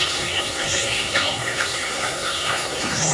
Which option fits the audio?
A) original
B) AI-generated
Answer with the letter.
B